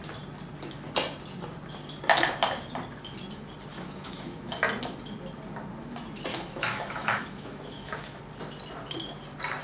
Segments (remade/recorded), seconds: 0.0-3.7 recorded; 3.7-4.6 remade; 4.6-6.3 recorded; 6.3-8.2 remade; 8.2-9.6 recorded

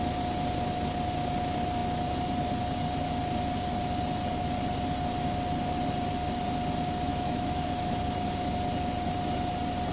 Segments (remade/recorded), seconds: 0.0-7.1 recorded; 7.1-8.0 remade; 8.0-9.9 recorded

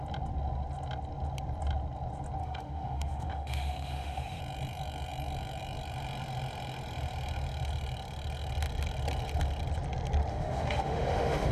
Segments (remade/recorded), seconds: 0.0-2.4 recorded; 2.4-4.4 remade; 4.4-10.3 recorded; 10.3-11.5 remade

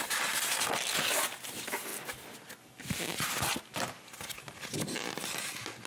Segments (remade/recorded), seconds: 0.0-5.9 recorded

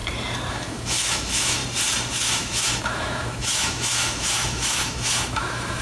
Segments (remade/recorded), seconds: 0.0-0.5 recorded; 0.5-1.6 remade; 1.6-2.1 recorded; 2.1-5.8 remade

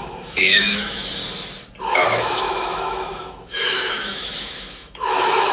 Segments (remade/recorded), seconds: 0.0-1.2 remade; 1.2-1.8 recorded; 1.8-5.5 remade

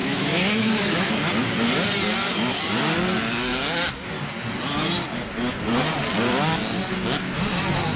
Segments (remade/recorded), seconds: 0.0-1.1 remade; 1.1-8.0 recorded

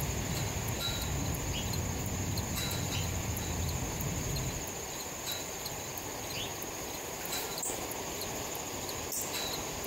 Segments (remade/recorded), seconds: 0.0-9.9 recorded